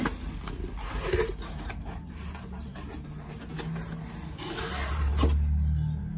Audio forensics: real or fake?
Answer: real